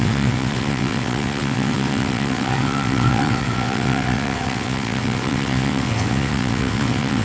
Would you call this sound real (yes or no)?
no